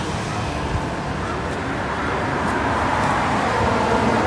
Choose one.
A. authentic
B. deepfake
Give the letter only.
A